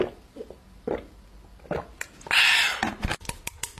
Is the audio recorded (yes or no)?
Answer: yes